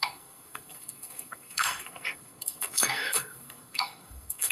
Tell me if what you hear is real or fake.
fake